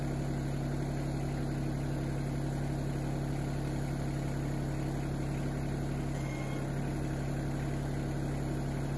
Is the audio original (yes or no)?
yes